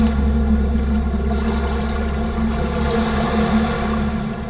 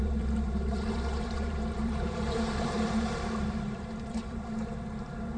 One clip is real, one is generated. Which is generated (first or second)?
second